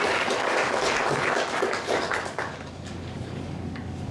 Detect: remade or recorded remade